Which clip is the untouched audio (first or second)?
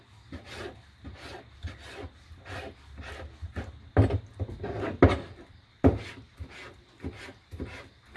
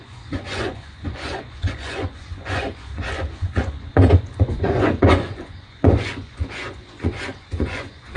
first